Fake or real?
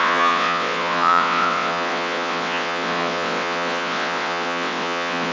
fake